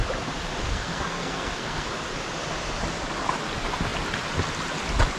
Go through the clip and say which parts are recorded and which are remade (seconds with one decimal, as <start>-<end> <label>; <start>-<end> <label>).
0.0-0.6 recorded; 0.6-1.9 remade; 1.9-5.2 recorded